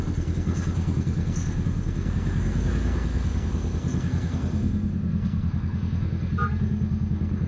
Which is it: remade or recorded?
remade